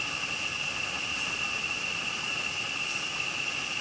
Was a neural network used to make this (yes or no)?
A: yes